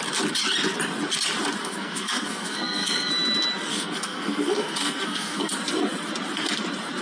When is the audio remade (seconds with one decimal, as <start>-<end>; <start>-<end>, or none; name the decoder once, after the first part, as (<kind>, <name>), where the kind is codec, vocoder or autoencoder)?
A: 1.6-3.1 (codec, SNAC); 3.7-5.5